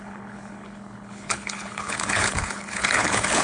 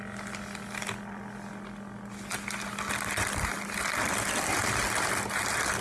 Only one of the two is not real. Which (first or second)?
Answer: first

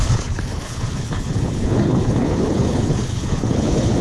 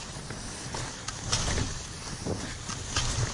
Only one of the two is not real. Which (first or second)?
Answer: first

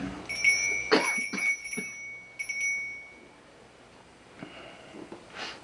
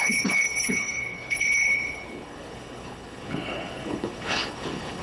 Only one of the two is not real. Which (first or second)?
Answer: second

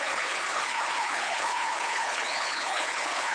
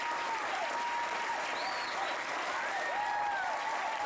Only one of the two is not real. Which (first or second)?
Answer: first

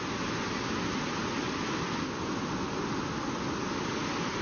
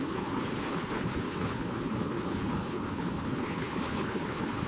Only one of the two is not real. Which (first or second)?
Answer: second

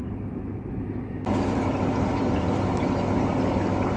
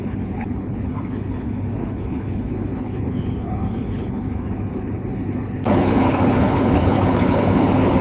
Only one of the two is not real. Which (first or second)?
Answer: second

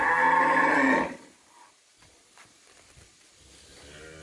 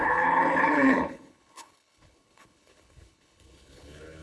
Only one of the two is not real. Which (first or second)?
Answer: second